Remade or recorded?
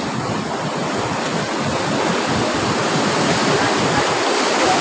recorded